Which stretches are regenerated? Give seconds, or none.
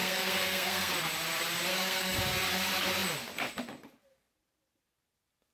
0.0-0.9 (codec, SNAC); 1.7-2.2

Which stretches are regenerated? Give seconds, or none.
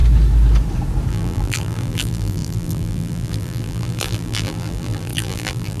1.1-5.8 (vocoder, BigVGAN v2)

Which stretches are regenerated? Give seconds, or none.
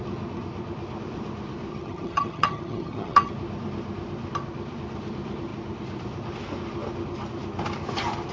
1.7-3.3 (vocoder, HiFi-GAN)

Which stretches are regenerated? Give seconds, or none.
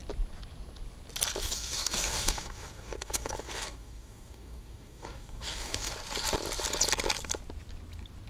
1.4-5.9 (codec, DAC)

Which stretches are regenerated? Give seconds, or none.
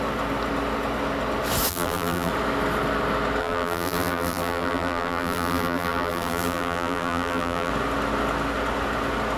1.7-2.3 (vocoder, BigVGAN v2); 3.4-7.7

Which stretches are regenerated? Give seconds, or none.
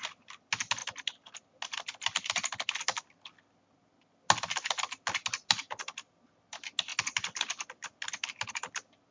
none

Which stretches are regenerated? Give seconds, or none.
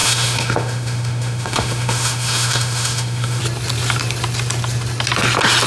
0.0-3.4 (autoencoder, DAC-VAE)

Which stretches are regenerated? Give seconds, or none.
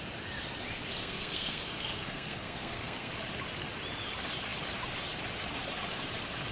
1.0-3.1 (codec, SNAC)